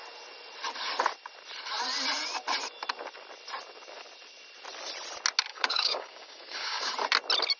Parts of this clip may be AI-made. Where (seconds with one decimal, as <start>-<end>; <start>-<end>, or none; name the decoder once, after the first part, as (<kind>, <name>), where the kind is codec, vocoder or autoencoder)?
5.5-6.9 (codec, DAC)